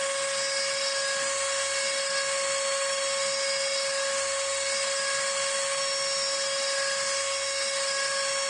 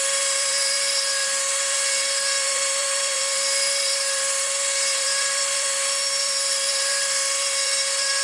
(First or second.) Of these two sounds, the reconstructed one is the second